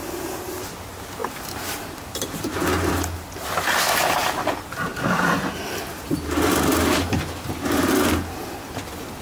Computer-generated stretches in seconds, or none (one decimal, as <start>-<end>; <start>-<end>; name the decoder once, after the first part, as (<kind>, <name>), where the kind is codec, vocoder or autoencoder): 1.2-2.9 (vocoder, BigVGAN v2); 4.9-7.9